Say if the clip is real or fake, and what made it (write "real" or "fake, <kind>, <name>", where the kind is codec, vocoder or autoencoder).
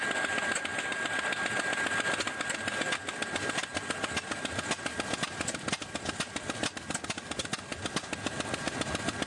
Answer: real